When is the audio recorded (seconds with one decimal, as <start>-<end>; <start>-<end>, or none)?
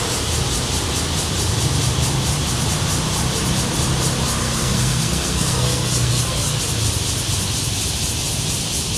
0.0-4.4; 6.6-9.0